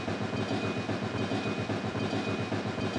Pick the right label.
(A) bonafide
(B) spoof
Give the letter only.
A